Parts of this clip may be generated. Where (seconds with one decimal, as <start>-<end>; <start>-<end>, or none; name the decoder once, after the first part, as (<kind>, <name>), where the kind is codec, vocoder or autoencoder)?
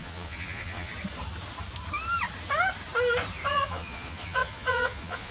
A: 0.0-0.9 (vocoder, Vocos); 3.5-5.3